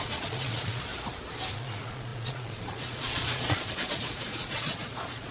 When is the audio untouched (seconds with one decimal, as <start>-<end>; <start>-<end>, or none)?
0.9-1.5

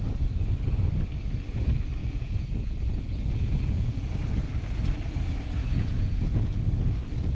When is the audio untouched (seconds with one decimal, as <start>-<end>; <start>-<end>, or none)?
0.0-2.0; 4.1-5.6; 6.8-7.3

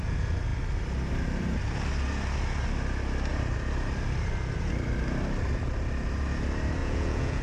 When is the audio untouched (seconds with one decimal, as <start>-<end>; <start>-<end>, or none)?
0.0-6.8